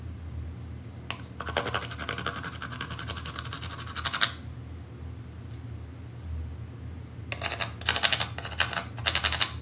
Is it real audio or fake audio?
real